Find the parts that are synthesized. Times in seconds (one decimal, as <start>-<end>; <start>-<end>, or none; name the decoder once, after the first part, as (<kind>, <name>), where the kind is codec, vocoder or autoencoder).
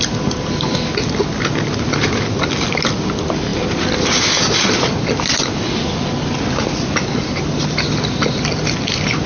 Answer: none